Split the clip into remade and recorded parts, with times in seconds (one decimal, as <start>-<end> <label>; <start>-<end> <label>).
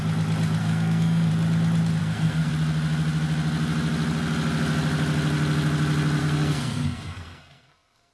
0.0-0.6 recorded; 0.6-1.3 remade; 1.3-2.0 recorded; 2.0-2.5 remade; 2.5-6.2 recorded; 6.2-8.1 remade